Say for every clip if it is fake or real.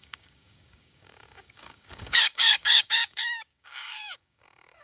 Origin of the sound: fake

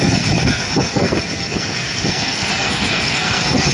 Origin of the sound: fake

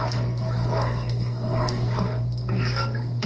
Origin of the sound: fake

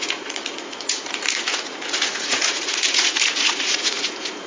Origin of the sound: fake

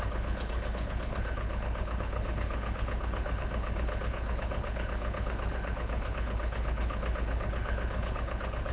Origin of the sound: fake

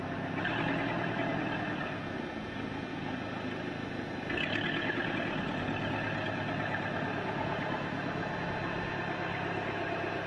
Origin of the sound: real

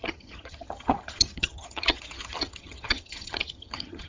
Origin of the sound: fake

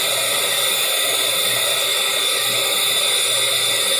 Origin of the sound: real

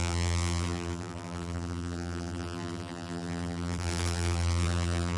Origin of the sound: fake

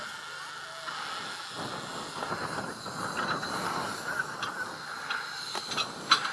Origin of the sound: real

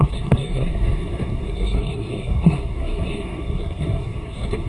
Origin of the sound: fake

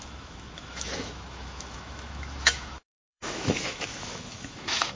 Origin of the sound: fake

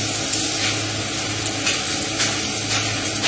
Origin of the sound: real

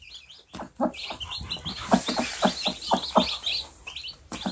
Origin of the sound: real